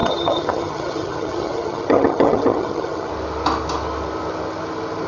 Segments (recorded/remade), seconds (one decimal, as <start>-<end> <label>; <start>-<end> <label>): 0.0-3.1 remade; 3.1-5.1 recorded